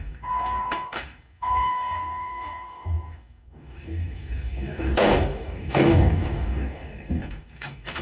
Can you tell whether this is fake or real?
fake